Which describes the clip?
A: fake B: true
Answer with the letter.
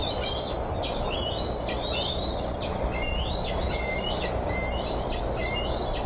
B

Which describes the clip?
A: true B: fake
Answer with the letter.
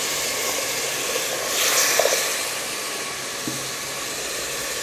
A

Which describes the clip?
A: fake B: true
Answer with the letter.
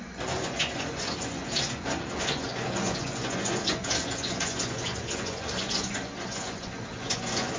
A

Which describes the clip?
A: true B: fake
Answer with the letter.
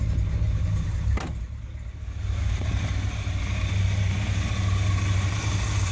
A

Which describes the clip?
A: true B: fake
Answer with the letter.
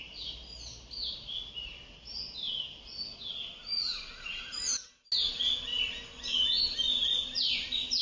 A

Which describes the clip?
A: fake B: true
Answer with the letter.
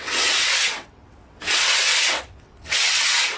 A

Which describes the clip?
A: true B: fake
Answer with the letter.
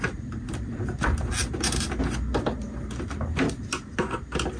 A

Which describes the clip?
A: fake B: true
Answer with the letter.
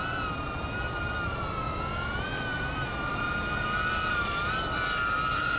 B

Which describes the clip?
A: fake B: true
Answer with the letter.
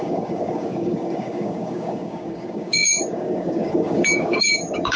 A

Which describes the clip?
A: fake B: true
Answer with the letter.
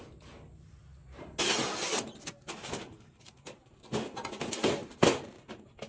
B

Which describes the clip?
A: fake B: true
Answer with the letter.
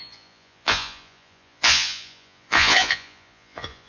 A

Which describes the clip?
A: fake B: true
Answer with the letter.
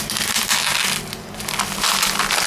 B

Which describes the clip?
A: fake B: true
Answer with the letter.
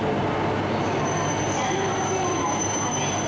B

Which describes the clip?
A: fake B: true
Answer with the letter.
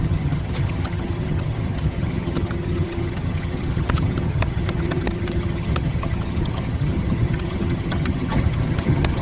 A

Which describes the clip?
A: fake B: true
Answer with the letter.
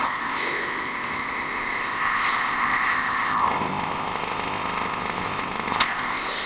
A